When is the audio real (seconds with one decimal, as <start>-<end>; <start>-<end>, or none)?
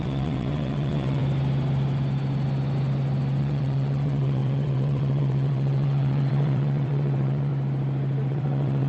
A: 1.2-3.4; 7.5-8.3